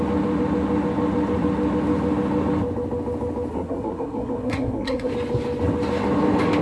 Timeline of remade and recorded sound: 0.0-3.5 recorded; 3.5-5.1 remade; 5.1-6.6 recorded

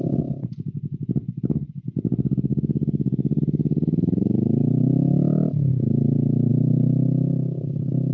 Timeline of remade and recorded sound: 0.0-2.5 recorded; 2.5-3.4 remade; 3.4-8.1 recorded